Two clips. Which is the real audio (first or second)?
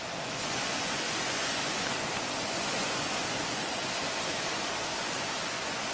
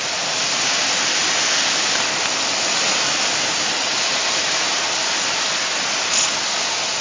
second